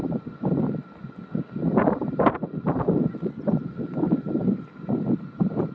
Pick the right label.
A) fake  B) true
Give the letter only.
B